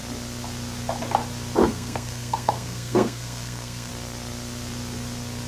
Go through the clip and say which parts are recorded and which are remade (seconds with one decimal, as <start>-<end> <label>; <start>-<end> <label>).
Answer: 0.0-1.6 recorded; 1.6-3.9 remade; 3.9-5.5 recorded